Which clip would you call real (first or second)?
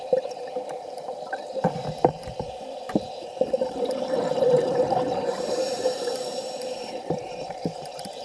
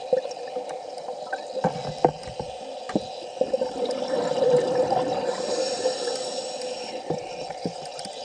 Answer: second